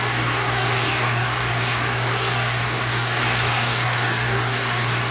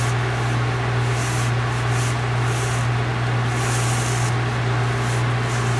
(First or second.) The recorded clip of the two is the second